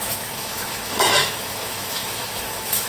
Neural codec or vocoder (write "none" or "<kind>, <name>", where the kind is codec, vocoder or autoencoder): autoencoder, DAC-VAE